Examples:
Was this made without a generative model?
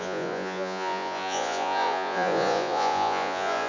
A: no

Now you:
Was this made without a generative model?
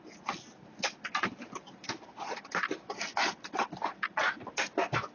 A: yes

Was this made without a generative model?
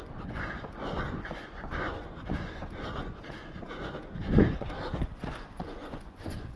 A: no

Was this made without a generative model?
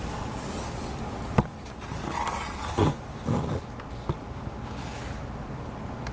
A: yes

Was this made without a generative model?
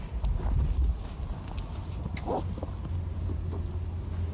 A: yes